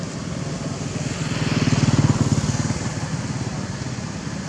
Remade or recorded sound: recorded